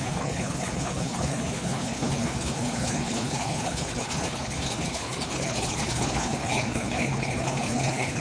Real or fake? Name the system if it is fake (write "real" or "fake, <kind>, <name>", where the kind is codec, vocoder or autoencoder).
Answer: fake, codec, HILCodec